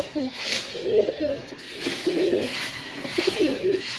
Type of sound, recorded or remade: remade